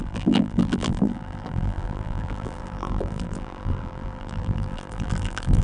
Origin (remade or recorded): remade